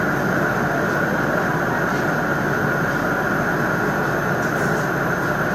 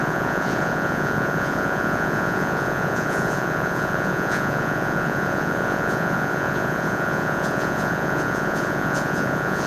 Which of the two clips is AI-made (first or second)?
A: second